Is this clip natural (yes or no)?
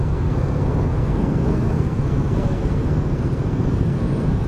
no